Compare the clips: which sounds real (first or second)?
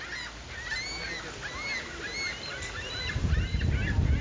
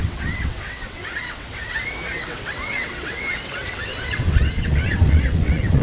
first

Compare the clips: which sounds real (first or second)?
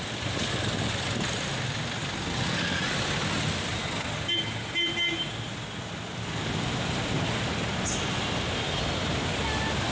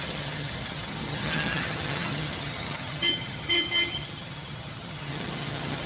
first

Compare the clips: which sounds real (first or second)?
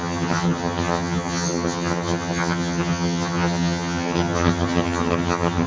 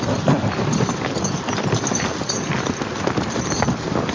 second